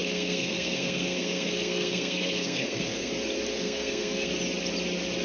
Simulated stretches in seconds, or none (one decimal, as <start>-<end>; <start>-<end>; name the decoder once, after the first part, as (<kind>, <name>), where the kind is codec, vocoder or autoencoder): 0.0-3.1 (codec, SNAC); 3.5-4.3